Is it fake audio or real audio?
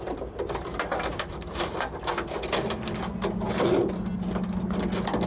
real